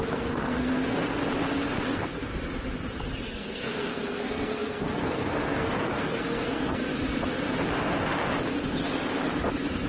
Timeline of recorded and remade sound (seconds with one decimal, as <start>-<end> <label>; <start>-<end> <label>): 0.0-1.2 remade; 1.2-1.8 recorded; 1.8-2.3 remade; 2.3-3.3 recorded; 3.3-6.9 remade; 6.9-9.9 recorded